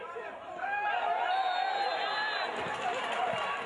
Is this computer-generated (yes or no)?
no